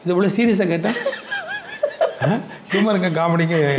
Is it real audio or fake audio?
real